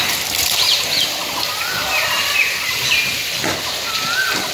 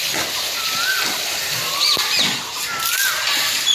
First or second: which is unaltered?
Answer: second